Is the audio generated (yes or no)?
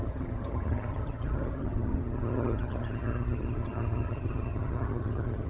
yes